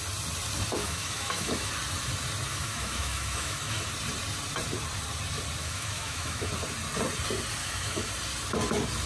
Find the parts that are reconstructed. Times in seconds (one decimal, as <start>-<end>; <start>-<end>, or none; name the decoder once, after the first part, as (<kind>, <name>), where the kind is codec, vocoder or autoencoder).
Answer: 0.8-1.7 (autoencoder, DAC-VAE); 2.5-3.9; 5.6-6.5; 7.6-8.1